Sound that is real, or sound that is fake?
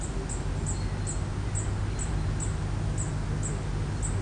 real